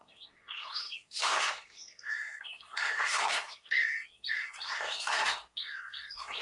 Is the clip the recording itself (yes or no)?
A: no